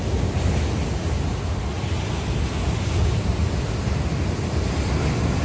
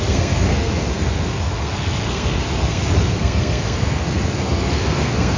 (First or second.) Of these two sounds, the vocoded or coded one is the second